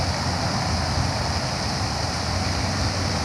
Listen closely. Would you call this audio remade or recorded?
recorded